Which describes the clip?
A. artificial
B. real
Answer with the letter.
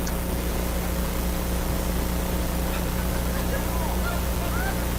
B